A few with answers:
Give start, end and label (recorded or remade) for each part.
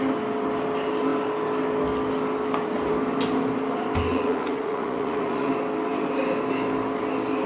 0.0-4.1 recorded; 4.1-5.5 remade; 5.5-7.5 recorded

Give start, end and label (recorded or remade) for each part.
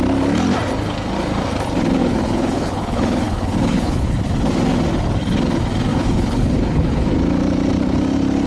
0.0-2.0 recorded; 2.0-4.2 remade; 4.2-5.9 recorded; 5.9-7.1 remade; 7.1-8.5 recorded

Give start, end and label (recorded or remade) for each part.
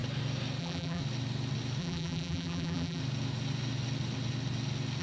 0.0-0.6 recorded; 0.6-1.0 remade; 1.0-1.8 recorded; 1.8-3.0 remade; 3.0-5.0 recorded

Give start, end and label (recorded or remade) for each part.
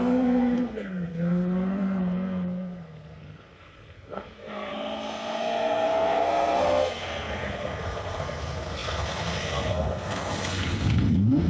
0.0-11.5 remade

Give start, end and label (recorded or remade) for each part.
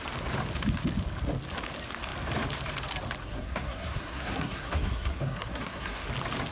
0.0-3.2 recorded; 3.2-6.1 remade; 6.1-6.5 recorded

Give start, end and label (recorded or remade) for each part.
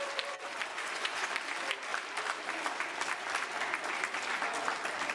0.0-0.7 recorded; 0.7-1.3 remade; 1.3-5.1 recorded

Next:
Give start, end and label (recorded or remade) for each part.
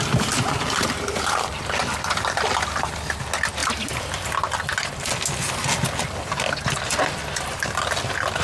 0.0-8.4 recorded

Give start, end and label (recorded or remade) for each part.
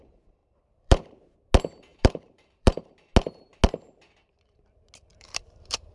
0.0-0.4 recorded; 0.4-1.0 remade; 1.0-1.9 recorded; 1.9-2.9 remade; 2.9-5.1 recorded; 5.1-5.9 remade